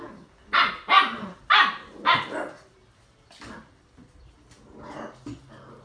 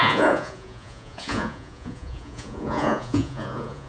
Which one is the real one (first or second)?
first